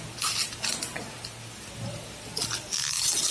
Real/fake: real